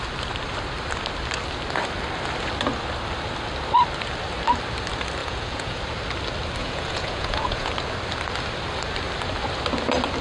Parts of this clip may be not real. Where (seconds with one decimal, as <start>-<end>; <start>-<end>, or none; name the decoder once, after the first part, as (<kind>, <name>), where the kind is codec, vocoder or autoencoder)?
5.2-5.8 (vocoder, Vocos); 6.6-7.7

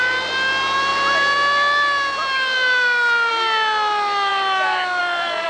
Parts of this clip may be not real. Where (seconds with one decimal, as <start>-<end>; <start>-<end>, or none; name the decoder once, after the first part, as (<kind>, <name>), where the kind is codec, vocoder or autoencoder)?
none

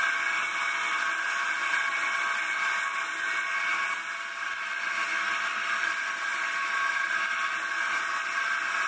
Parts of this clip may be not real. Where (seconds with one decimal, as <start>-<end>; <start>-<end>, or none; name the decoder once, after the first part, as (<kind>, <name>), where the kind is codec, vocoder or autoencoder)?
none

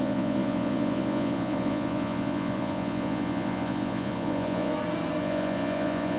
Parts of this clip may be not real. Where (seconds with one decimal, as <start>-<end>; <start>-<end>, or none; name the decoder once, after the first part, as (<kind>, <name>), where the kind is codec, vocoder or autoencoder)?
0.0-4.7 (vocoder, Vocos); 5.2-6.2

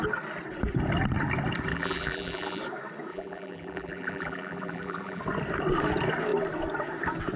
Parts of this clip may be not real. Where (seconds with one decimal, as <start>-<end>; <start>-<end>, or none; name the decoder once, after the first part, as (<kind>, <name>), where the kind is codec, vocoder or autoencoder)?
1.7-2.6 (vocoder, BigVGAN v2); 3.1-5.2

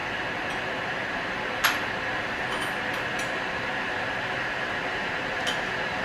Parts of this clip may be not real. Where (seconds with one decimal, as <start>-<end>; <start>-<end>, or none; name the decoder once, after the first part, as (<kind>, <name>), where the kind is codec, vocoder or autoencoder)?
none

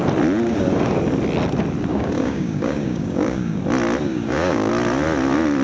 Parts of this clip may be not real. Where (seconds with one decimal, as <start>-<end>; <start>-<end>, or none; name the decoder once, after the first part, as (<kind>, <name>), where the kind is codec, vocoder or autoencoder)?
1.9-3.6 (codec, DAC); 4.1-4.7

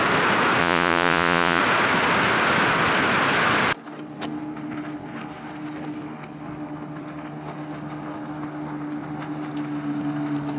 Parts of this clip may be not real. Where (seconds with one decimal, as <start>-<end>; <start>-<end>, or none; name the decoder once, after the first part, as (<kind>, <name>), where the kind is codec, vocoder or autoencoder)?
0.6-1.6 (vocoder, Vocos)